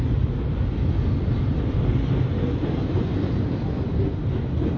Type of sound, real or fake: real